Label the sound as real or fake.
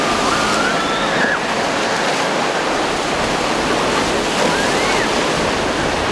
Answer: real